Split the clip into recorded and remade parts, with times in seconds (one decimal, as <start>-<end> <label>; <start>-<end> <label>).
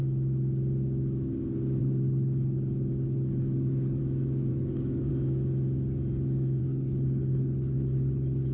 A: 0.0-1.8 recorded; 1.8-4.0 remade; 4.0-4.5 recorded; 4.5-5.1 remade; 5.1-6.6 recorded; 6.6-8.5 remade